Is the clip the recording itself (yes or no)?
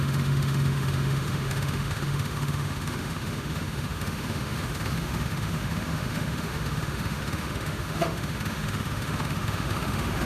no